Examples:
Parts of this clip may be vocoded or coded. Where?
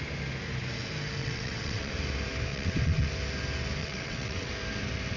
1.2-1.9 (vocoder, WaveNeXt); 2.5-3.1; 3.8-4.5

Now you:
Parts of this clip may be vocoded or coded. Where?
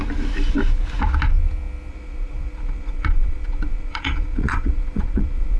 1.9-5.6 (vocoder, Vocos)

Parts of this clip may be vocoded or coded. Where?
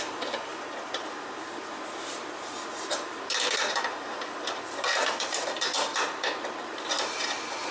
0.0-7.7 (vocoder, BigVGAN v2)